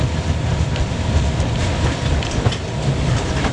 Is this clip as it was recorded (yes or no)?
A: yes